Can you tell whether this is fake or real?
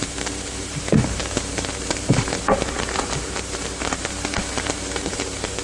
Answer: fake